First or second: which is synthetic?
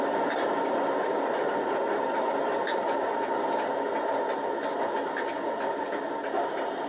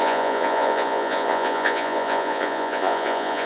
second